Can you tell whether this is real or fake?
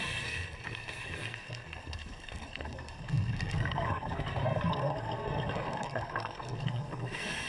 fake